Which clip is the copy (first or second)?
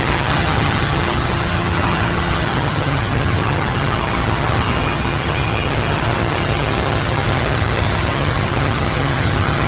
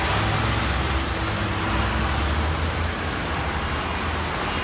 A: first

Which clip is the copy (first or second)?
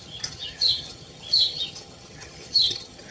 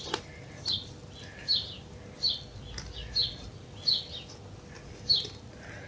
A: first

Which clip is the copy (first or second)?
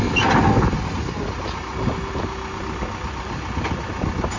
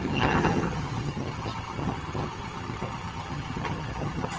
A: second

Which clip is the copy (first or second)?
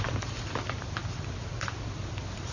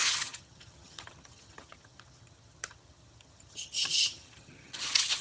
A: second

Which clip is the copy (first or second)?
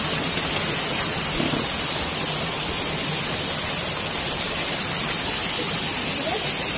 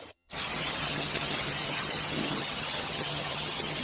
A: second